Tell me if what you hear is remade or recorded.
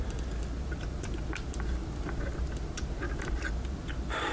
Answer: recorded